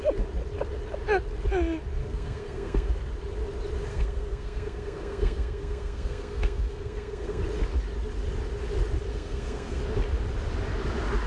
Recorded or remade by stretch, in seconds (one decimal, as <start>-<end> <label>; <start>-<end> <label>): 0.0-2.0 recorded; 2.0-2.9 remade; 2.9-3.9 recorded; 3.9-7.4 remade; 7.4-9.1 recorded; 9.1-9.8 remade; 9.8-11.3 recorded

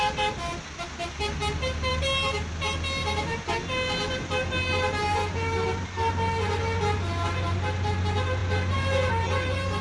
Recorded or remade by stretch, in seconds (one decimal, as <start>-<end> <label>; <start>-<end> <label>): 0.0-9.8 recorded

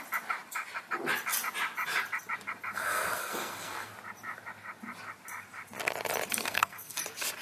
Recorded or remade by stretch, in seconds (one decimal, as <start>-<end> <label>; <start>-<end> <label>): 0.0-2.7 recorded; 2.7-3.9 remade; 3.9-6.4 recorded; 6.4-7.0 remade; 7.0-7.4 recorded